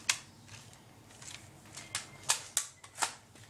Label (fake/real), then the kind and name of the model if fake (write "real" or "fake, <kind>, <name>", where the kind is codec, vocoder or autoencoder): real